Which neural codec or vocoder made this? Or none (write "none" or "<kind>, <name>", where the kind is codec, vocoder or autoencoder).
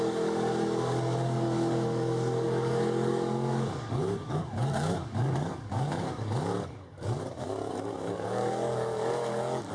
codec, DAC